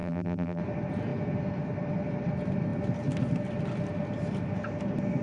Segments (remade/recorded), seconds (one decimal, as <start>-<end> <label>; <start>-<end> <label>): 0.0-0.6 remade; 0.6-5.2 recorded